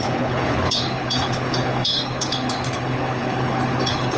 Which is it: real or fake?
fake